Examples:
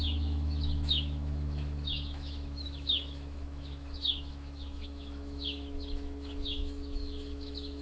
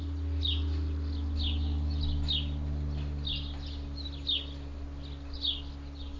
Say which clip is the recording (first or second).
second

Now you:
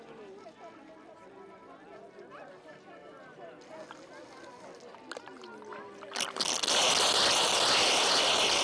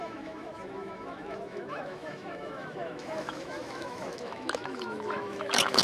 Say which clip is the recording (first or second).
first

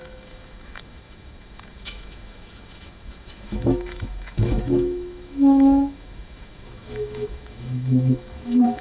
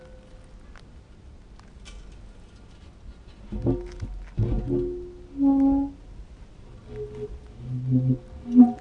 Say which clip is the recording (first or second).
second